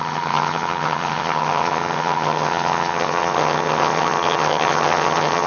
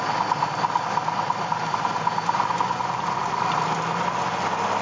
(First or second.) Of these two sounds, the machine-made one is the first